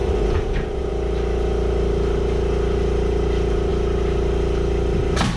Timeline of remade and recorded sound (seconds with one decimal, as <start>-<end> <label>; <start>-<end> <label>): 0.0-0.9 remade; 0.9-5.4 recorded